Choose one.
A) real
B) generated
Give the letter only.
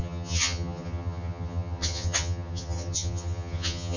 B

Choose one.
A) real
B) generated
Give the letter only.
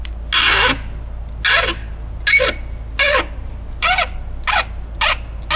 A